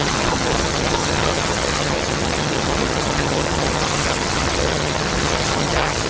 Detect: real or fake fake